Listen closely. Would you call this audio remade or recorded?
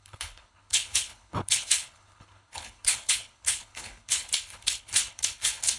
remade